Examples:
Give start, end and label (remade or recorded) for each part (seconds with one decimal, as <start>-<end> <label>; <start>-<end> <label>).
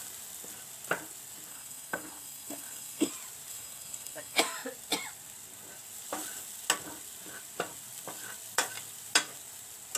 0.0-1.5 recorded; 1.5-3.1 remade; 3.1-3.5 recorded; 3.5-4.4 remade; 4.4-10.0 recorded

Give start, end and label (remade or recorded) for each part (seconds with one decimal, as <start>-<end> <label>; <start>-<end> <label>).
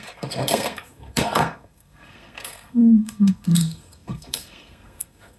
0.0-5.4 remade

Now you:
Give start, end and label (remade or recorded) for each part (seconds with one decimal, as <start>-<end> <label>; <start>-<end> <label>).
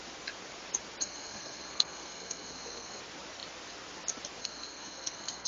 0.0-1.0 recorded; 1.0-3.0 remade; 3.0-4.4 recorded; 4.4-5.5 remade